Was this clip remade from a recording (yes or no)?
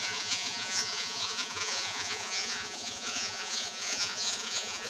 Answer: yes